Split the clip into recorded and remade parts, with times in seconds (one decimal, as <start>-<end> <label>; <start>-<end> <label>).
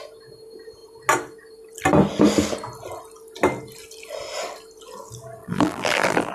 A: 0.0-5.4 recorded; 5.4-6.3 remade